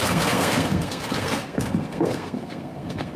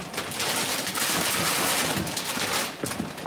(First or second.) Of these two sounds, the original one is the second